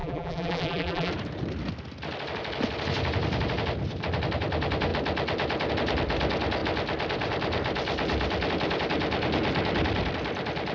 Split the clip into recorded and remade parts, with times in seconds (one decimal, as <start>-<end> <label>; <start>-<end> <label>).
0.0-1.1 remade; 1.1-10.7 recorded